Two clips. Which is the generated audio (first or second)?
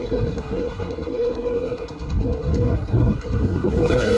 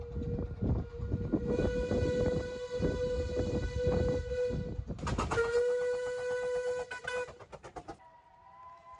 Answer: first